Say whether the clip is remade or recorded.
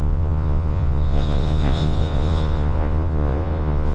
remade